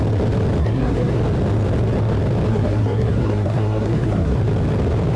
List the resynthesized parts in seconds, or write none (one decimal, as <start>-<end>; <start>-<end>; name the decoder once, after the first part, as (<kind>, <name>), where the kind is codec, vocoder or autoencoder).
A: 0.6-1.2 (codec, SNAC); 2.5-4.4